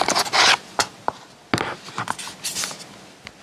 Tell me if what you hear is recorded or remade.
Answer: recorded